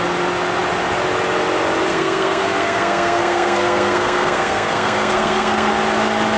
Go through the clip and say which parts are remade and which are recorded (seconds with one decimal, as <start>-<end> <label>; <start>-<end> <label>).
0.0-1.9 recorded; 1.9-5.7 remade; 5.7-6.4 recorded

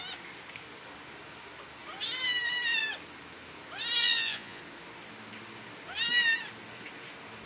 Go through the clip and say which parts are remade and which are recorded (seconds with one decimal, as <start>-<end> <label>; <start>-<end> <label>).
0.0-4.0 recorded; 4.0-4.6 remade; 4.6-7.5 recorded

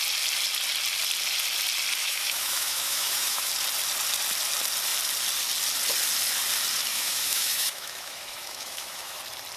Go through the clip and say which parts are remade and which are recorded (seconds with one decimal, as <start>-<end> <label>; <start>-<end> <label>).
0.0-2.0 recorded; 2.0-3.5 remade; 3.5-6.9 recorded; 6.9-9.2 remade; 9.2-9.6 recorded

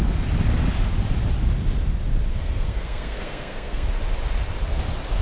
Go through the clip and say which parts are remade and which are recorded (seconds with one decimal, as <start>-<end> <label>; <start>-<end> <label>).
0.0-2.4 recorded; 2.4-3.9 remade; 3.9-5.2 recorded

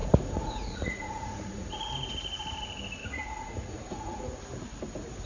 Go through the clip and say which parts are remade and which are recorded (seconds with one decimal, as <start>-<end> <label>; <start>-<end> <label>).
0.0-1.9 remade; 1.9-3.0 recorded; 3.0-4.4 remade; 4.4-5.3 recorded